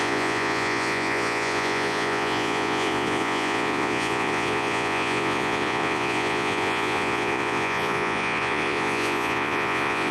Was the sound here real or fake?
fake